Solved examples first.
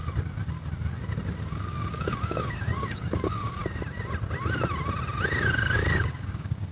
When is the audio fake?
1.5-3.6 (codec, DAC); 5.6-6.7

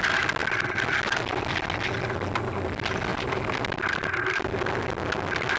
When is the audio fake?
3.1-4.5 (vocoder, BigVGAN v2)

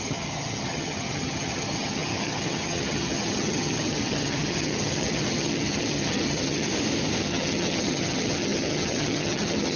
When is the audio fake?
0.0-6.7 (vocoder, HiFi-GAN); 7.2-9.8

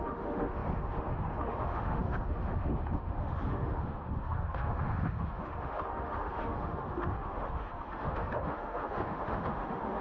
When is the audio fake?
0.0-10.0 (autoencoder, DAC-VAE)

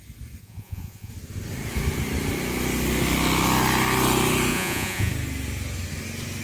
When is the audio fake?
0.4-1.1 (vocoder, Vocos); 4.5-5.1